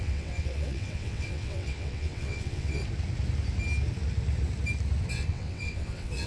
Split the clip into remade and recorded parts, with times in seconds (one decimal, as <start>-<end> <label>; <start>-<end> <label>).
0.0-2.8 remade; 2.8-5.1 recorded; 5.1-6.3 remade